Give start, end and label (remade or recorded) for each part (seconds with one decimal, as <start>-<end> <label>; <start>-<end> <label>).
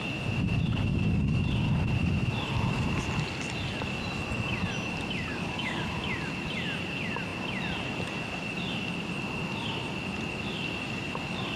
0.0-0.9 recorded; 0.9-1.5 remade; 1.5-5.3 recorded; 5.3-5.9 remade; 5.9-11.6 recorded